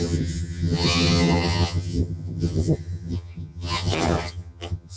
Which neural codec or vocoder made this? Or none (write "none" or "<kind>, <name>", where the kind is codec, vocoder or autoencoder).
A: vocoder, HiFi-GAN